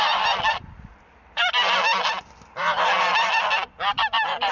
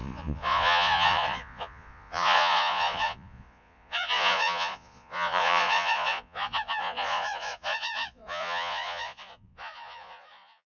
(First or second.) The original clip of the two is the first